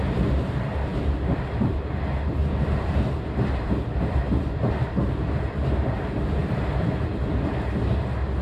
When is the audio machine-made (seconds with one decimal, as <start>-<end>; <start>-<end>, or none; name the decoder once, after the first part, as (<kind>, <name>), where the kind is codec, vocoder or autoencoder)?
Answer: 0.0-8.4 (vocoder, BigVGAN v2)